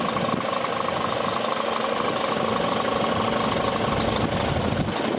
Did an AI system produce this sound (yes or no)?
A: no